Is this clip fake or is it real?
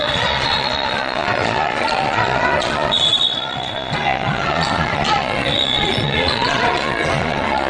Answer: fake